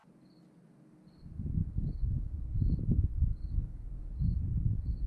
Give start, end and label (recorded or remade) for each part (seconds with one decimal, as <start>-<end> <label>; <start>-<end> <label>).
0.0-1.6 recorded; 1.6-5.1 remade